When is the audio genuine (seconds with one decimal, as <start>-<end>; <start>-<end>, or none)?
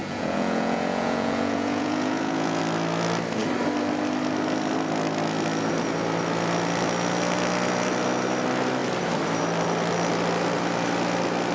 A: 2.6-11.5